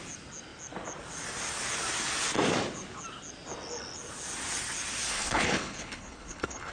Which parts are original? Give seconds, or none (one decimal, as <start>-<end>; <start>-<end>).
0.0-5.1